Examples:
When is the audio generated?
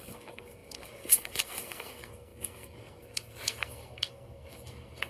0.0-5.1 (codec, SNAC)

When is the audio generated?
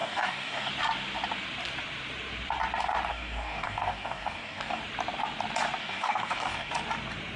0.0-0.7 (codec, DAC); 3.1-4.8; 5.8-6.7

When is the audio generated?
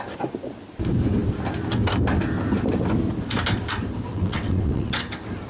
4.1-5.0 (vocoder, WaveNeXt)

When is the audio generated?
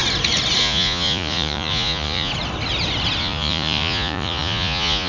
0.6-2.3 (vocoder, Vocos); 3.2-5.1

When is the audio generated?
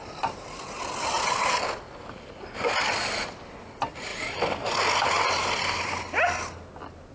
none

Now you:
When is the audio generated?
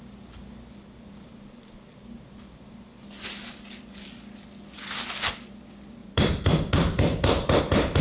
6.0-7.6 (vocoder, BigVGAN v2)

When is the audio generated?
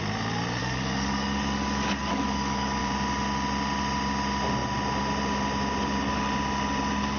0.6-2.8 (codec, DAC)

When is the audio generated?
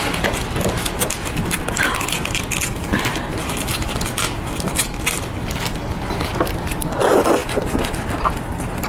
none